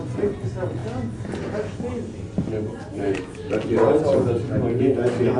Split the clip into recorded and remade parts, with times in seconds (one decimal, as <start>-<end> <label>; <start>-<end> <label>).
0.0-2.9 recorded; 2.9-3.5 remade; 3.5-5.4 recorded

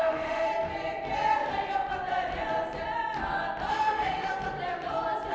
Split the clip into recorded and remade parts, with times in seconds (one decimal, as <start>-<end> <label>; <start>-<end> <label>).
0.0-0.5 remade; 0.5-3.7 recorded; 3.7-4.3 remade; 4.3-5.3 recorded

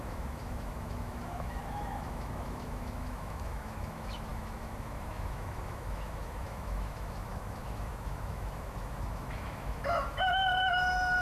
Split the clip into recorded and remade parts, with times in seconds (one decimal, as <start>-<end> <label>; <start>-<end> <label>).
0.0-11.2 remade

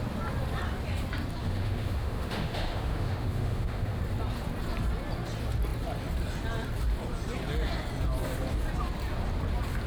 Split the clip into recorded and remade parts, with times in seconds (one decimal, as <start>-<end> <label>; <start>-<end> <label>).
0.0-1.4 recorded; 1.4-4.0 remade; 4.0-9.9 recorded